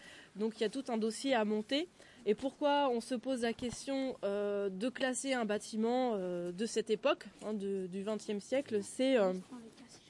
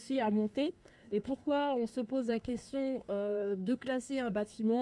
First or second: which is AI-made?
second